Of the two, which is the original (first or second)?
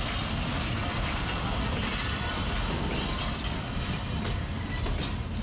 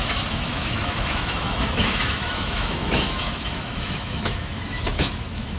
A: first